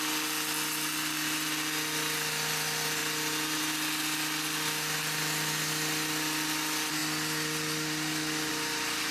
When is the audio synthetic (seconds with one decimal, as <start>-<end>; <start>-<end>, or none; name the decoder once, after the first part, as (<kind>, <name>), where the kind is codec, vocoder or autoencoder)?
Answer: none